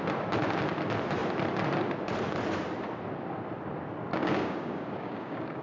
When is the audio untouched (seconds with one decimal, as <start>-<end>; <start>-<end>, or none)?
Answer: 0.0-4.1